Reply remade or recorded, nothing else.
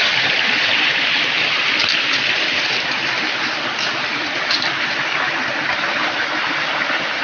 recorded